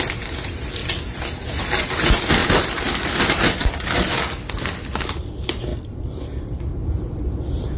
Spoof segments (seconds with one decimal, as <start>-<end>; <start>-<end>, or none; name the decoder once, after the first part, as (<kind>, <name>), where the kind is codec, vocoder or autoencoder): none